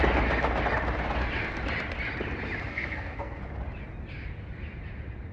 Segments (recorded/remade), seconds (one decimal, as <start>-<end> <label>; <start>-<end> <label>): 0.0-2.7 recorded; 2.7-3.4 remade; 3.4-5.3 recorded